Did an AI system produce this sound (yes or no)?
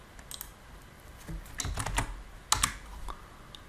no